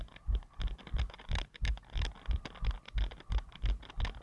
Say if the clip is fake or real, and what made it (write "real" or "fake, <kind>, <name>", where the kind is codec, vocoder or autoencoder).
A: real